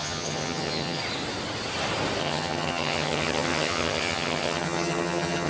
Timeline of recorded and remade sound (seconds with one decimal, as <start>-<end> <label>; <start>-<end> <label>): 0.0-1.0 remade; 1.0-2.2 recorded; 2.2-5.5 remade